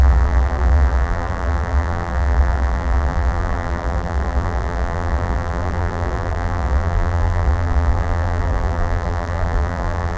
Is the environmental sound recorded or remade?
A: remade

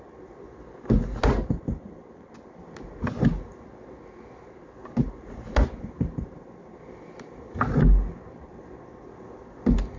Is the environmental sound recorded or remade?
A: recorded